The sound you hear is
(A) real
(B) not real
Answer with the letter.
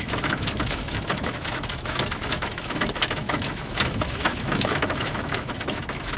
B